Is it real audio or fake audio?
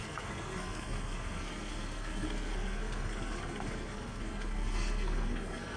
fake